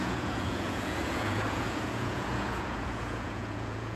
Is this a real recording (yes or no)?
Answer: no